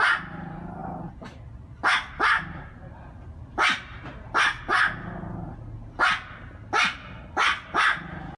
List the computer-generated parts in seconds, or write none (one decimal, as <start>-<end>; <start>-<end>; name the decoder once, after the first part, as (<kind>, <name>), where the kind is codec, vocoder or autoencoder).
none

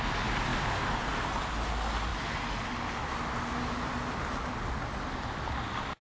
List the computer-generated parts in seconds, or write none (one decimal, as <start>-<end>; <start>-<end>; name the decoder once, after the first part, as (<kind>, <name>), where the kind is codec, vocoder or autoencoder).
none

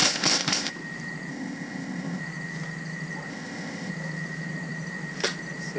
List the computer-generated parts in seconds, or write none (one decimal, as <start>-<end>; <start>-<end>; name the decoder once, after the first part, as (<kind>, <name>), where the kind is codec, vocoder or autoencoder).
0.0-0.7 (codec, ZipCodec); 1.3-2.2; 3.3-3.9

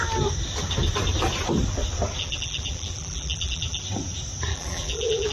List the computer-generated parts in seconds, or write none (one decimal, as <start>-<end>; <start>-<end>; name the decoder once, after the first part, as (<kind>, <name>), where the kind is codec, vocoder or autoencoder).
2.2-3.8 (vocoder, BigVGAN v2); 4.5-5.3

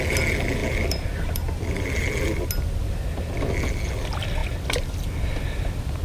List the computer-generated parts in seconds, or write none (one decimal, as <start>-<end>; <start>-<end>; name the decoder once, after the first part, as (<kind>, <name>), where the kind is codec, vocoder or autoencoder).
none

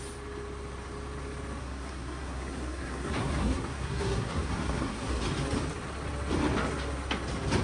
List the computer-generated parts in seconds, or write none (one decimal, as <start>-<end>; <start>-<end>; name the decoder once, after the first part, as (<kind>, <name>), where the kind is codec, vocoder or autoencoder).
1.6-5.2 (codec, SNAC)

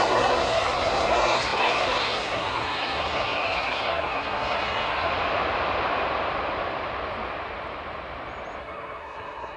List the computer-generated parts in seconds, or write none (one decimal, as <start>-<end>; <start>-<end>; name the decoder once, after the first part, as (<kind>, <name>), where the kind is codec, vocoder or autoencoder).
0.0-5.1 (codec, SNAC); 8.6-9.6

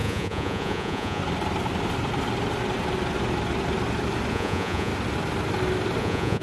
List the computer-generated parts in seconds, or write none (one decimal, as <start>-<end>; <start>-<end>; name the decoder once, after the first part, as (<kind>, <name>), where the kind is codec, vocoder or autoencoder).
0.0-1.2 (vocoder, Vocos); 4.3-4.9; 6.0-6.4